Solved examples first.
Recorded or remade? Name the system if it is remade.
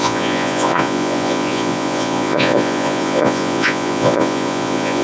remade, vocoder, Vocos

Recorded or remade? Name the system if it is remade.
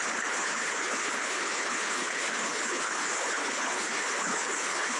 remade, codec, HILCodec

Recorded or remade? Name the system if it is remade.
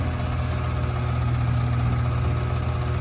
recorded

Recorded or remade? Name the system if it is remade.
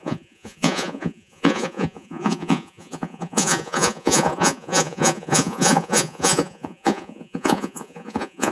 remade, vocoder, Vocos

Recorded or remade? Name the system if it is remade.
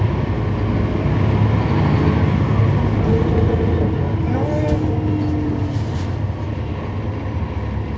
recorded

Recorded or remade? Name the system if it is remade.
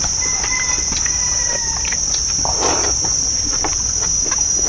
remade, vocoder, BigVGAN v2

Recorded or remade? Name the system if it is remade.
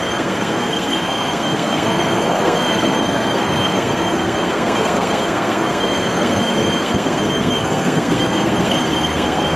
remade, codec, SNAC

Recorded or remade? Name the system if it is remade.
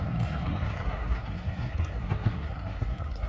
remade, codec, SNAC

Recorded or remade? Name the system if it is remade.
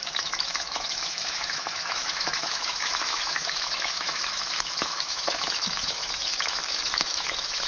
remade, autoencoder, DAC-VAE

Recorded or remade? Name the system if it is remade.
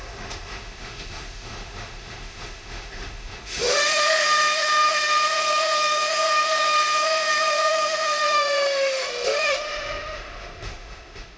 remade, autoencoder, DAC-VAE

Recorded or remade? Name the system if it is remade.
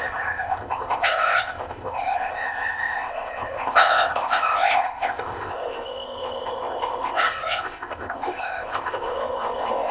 remade, codec, ZipCodec